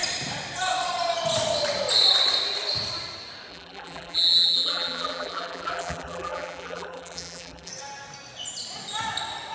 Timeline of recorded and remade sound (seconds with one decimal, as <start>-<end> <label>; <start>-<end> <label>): 0.0-3.5 recorded; 3.5-7.7 remade; 7.7-9.5 recorded